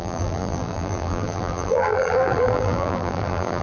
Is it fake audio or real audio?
fake